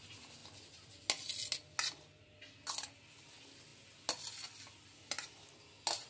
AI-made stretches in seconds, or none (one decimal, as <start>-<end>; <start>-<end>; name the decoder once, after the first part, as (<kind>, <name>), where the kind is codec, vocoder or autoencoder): none